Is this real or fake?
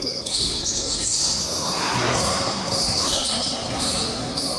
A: fake